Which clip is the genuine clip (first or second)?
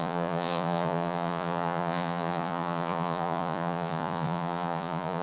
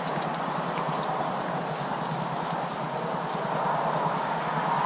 second